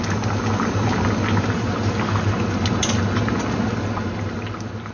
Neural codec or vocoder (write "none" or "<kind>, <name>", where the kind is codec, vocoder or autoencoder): none